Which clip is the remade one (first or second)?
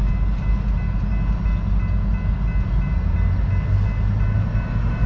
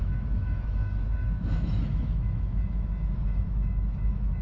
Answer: second